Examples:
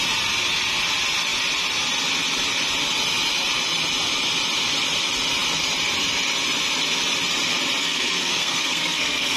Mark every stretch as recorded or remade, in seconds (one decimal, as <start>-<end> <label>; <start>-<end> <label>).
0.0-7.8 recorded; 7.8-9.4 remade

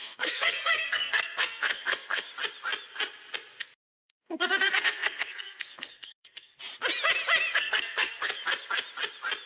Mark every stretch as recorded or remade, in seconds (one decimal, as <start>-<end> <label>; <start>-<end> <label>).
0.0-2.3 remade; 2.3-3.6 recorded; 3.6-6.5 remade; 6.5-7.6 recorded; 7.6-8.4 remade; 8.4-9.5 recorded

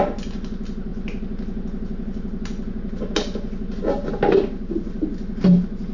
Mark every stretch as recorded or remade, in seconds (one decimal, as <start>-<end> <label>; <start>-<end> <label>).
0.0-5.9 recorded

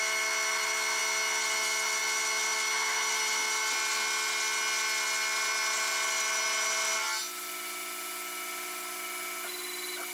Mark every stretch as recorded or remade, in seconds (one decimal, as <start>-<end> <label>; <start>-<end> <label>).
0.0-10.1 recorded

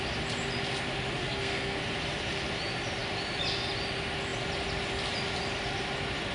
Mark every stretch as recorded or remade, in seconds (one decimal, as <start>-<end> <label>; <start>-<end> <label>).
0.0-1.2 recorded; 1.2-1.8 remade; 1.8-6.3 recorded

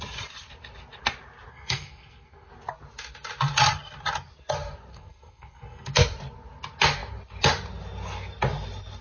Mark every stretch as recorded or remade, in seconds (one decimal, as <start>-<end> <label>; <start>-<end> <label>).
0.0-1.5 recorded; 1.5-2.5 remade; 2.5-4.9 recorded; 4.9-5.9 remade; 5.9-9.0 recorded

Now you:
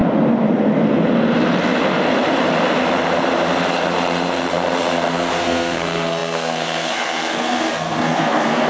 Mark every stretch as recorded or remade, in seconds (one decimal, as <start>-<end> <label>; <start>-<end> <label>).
0.0-5.1 recorded; 5.1-8.7 remade

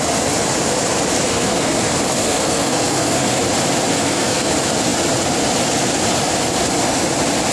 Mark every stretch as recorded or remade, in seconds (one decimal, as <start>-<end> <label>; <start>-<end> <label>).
0.0-1.3 recorded; 1.3-1.8 remade; 1.8-2.2 recorded; 2.2-3.4 remade; 3.4-3.9 recorded; 3.9-4.5 remade; 4.5-7.5 recorded